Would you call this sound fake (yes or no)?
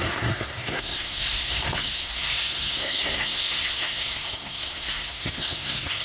yes